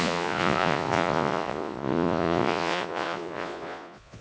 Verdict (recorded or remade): remade